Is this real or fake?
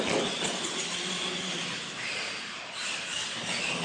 real